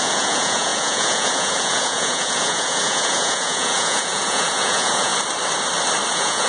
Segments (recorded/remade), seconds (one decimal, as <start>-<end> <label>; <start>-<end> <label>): 0.0-5.1 remade; 5.1-6.1 recorded; 6.1-6.5 remade